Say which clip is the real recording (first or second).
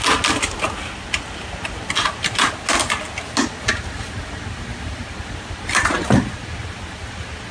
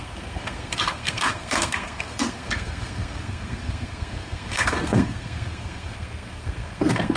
first